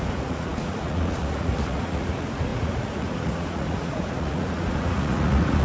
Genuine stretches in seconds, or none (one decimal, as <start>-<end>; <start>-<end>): none